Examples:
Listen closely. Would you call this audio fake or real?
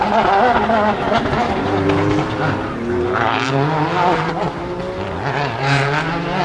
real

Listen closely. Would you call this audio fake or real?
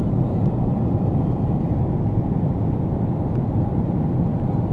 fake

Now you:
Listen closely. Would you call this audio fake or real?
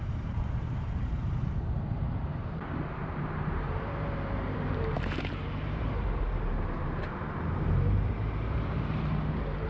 fake